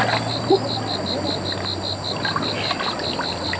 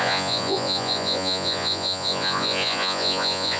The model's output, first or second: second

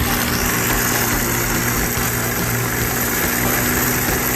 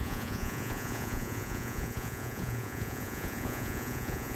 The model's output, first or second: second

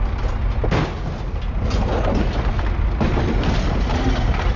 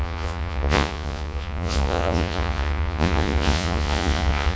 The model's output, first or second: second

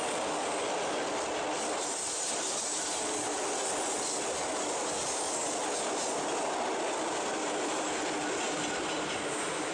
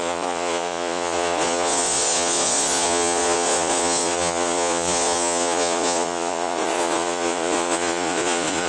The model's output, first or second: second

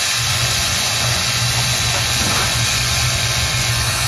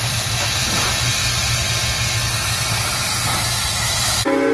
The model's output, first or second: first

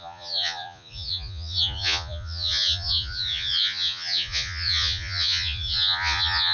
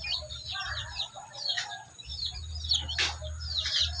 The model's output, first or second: first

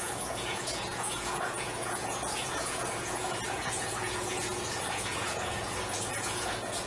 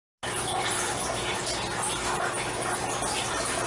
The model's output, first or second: first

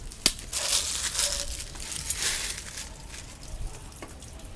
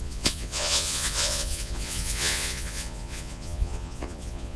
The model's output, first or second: second